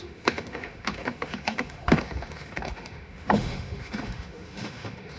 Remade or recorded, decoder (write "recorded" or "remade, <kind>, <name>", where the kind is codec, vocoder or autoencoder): remade, autoencoder, DAC-VAE